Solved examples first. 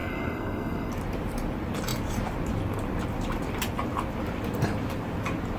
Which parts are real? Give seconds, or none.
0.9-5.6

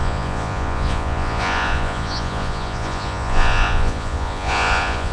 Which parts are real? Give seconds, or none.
none

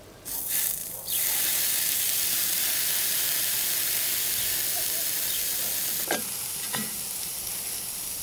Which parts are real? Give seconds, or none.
0.0-0.8; 2.7-8.2

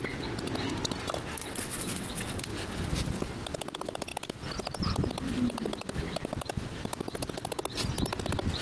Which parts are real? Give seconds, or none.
0.0-1.4; 2.4-8.6

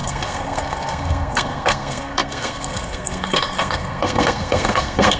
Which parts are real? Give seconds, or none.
none

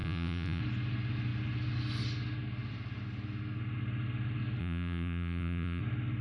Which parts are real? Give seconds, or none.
0.6-4.6; 5.8-6.2

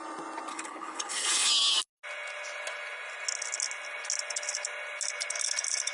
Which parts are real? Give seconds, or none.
0.0-0.5; 1.5-5.9

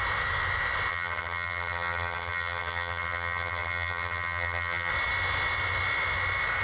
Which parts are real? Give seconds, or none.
0.0-0.9; 4.9-6.6